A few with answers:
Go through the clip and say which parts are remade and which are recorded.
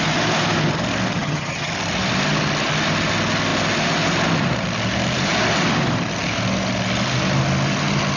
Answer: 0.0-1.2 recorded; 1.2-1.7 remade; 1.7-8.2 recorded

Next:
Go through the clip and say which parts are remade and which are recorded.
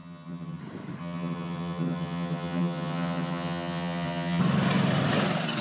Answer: 0.0-0.6 remade; 0.6-1.0 recorded; 1.0-4.4 remade; 4.4-5.6 recorded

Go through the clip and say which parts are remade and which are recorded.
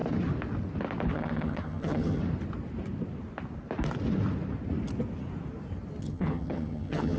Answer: 0.0-1.1 recorded; 1.1-2.2 remade; 2.2-6.0 recorded; 6.0-7.2 remade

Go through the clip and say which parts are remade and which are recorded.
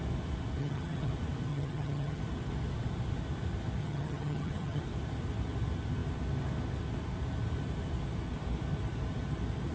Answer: 0.0-0.6 recorded; 0.6-1.1 remade; 1.1-1.5 recorded; 1.5-2.2 remade; 2.2-3.8 recorded; 3.8-4.8 remade; 4.8-9.7 recorded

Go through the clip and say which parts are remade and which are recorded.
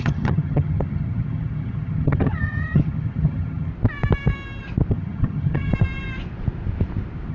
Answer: 0.0-3.7 remade; 3.7-4.9 recorded; 4.9-5.7 remade; 5.7-7.3 recorded